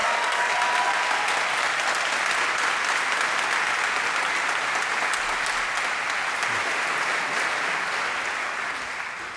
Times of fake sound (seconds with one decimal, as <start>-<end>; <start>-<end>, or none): 0.0-0.5